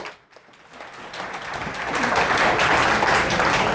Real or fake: real